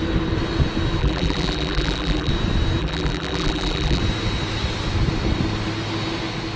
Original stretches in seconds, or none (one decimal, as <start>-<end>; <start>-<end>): 0.0-1.0; 2.3-2.8; 4.0-6.6